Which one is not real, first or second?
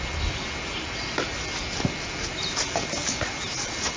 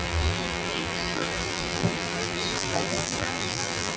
second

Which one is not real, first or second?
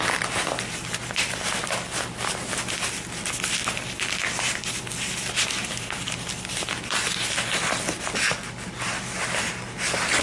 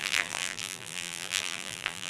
second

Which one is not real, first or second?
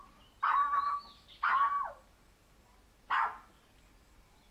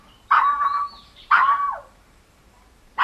second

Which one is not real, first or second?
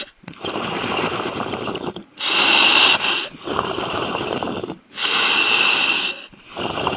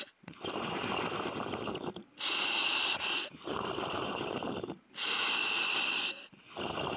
first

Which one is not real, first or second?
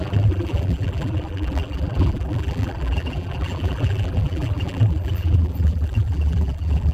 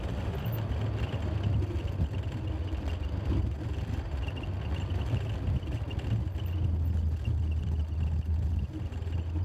first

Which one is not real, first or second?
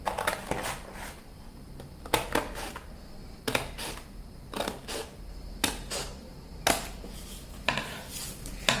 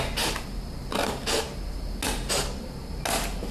first